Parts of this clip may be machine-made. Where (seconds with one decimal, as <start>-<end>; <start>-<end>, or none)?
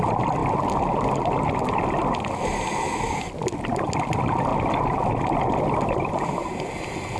none